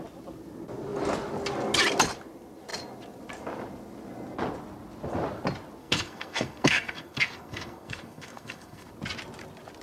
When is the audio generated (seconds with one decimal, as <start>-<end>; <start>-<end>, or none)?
5.8-8.9